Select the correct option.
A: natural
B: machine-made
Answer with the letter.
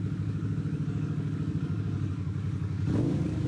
B